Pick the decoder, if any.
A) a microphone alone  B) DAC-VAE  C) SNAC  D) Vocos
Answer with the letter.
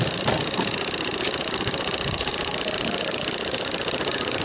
A